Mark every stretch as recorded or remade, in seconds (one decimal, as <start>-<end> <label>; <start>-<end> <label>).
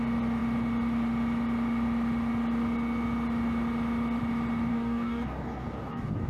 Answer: 0.0-4.7 recorded; 4.7-6.3 remade